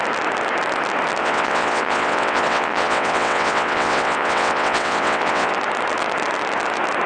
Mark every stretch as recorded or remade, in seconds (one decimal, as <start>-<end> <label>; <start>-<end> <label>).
0.0-1.2 recorded; 1.2-5.5 remade; 5.5-7.1 recorded